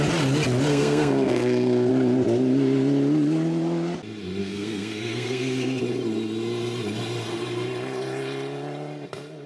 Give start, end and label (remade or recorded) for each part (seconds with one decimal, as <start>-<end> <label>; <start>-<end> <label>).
0.0-0.7 recorded; 0.7-1.9 remade; 1.9-4.4 recorded; 4.4-5.8 remade; 5.8-9.5 recorded